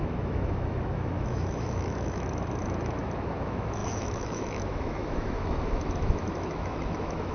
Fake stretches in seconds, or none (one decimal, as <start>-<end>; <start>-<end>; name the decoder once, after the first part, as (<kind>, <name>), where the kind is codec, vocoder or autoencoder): 0.0-7.3 (autoencoder, DAC-VAE)